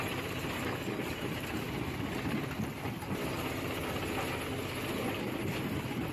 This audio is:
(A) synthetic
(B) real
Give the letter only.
B